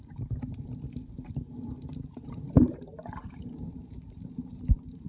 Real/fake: fake